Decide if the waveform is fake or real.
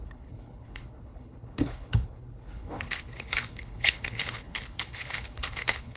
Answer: fake